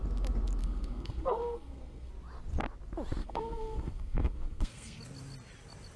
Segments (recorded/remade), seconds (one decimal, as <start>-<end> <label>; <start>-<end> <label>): 0.0-0.6 recorded; 0.6-2.1 remade; 2.1-3.2 recorded; 3.2-5.0 remade; 5.0-6.0 recorded